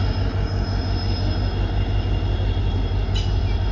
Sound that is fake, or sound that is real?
real